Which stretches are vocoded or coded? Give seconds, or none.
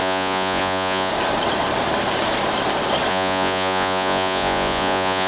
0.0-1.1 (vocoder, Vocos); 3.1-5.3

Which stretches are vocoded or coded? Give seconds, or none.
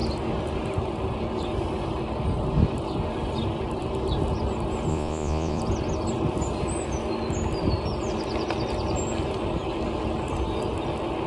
4.9-5.6 (vocoder, Vocos)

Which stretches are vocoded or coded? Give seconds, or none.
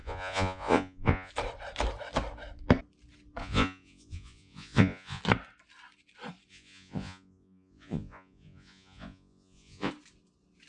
0.0-1.3 (vocoder, Vocos); 3.4-5.2; 6.5-9.9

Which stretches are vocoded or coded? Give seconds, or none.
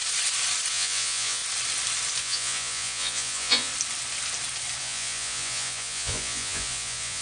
0.7-1.4 (vocoder, Vocos); 2.2-3.7; 4.8-7.2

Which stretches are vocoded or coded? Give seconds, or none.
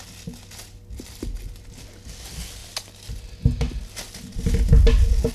none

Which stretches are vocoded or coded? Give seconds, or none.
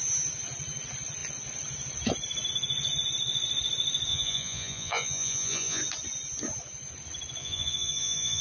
4.1-5.8 (vocoder, Vocos); 7.4-8.4